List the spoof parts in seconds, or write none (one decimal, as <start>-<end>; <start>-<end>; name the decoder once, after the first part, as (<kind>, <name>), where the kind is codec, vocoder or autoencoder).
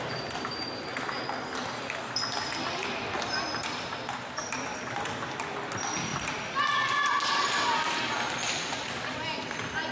none